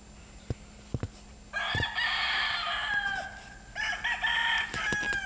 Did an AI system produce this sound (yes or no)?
no